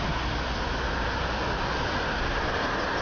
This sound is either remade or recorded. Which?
recorded